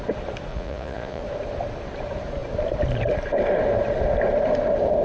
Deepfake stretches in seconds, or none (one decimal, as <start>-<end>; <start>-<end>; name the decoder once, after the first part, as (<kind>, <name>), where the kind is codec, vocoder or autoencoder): 0.5-1.2 (vocoder, Vocos)